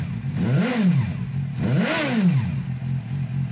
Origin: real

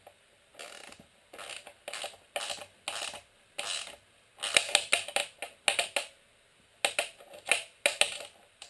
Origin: real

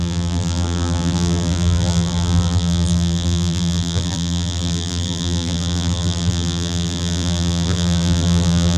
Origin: fake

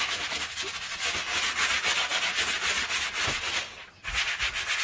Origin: real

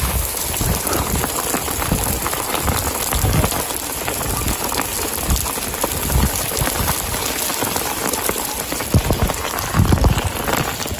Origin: real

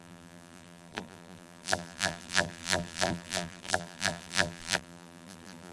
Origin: fake